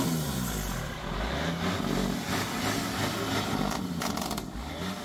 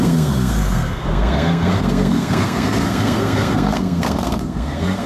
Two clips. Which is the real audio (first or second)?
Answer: first